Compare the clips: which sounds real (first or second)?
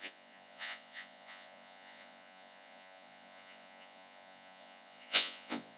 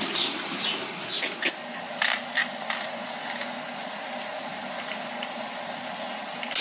second